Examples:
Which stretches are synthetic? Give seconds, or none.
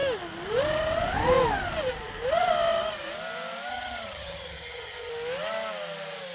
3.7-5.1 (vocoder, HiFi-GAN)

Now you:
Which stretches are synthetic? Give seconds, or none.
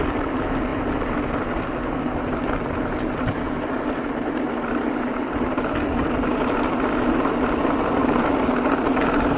none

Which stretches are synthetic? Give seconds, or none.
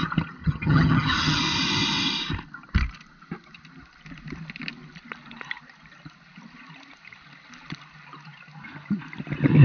0.4-1.4 (vocoder, HiFi-GAN)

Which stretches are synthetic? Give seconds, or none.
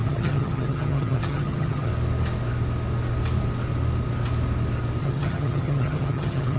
0.0-1.9 (vocoder, HiFi-GAN); 5.0-6.6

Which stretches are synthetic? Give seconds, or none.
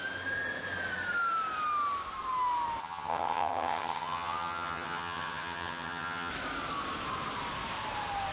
2.8-6.3 (vocoder, HiFi-GAN)